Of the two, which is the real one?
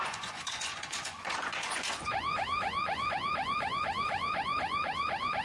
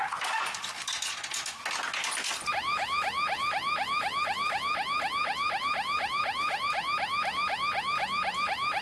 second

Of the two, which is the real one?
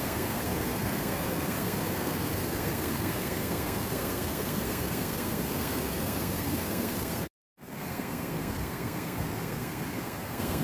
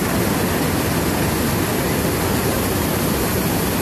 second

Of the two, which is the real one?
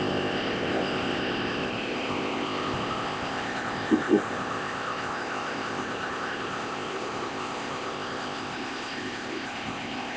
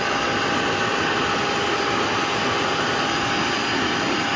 second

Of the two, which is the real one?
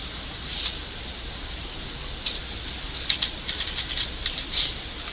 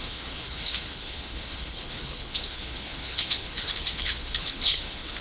first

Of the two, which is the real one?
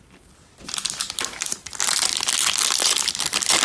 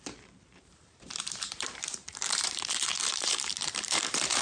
first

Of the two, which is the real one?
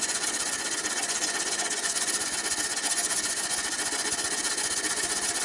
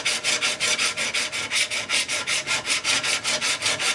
second